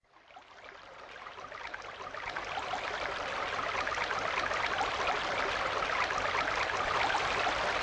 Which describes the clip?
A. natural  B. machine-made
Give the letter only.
A